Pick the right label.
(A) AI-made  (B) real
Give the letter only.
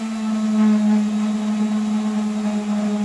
B